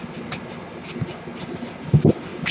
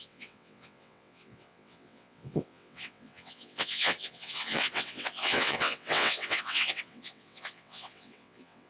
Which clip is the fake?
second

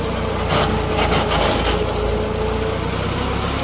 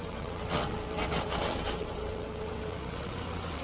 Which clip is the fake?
second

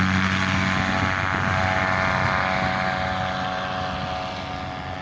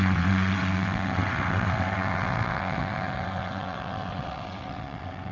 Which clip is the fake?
second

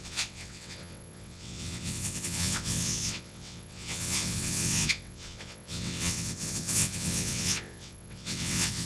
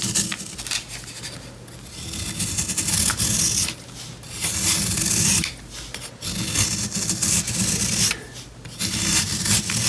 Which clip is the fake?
first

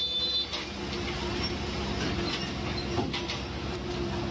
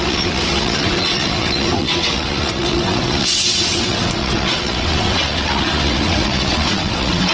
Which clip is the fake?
second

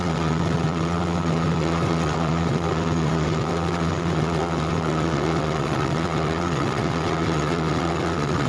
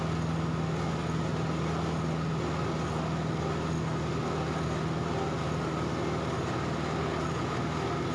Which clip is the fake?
first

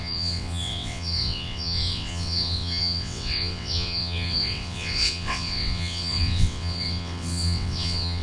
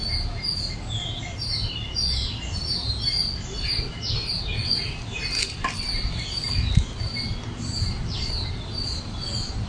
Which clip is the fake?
first